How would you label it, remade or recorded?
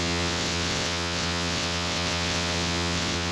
remade